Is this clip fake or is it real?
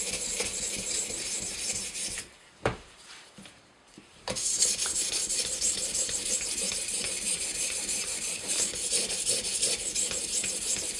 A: fake